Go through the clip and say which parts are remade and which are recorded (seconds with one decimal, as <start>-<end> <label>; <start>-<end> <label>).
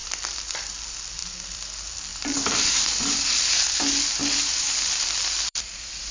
0.0-0.7 remade; 0.7-1.2 recorded; 1.2-1.7 remade; 1.7-2.1 recorded; 2.1-3.7 remade; 3.7-4.2 recorded; 4.2-6.1 remade